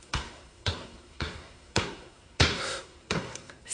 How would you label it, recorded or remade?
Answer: remade